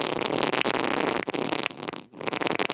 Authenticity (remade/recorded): recorded